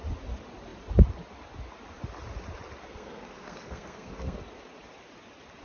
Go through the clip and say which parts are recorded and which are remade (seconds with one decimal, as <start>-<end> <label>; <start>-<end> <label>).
0.0-2.9 recorded; 2.9-4.4 remade; 4.4-5.6 recorded